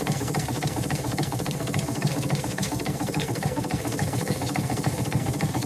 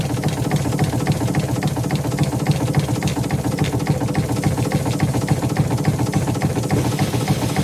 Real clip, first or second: second